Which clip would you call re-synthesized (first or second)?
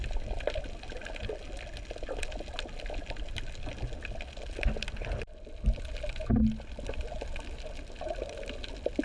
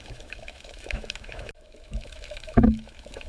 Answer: second